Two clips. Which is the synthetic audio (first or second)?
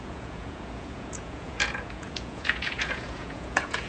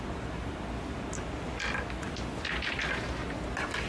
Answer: first